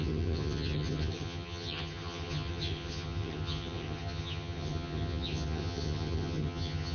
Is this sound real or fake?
fake